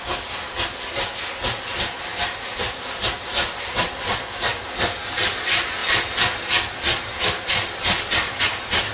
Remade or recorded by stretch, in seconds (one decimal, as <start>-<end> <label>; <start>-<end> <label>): 0.0-8.9 recorded